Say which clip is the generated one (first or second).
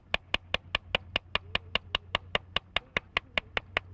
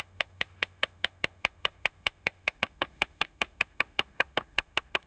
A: second